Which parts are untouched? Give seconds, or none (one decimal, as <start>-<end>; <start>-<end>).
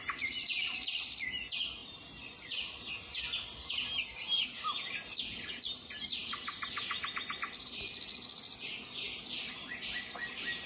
0.0-10.7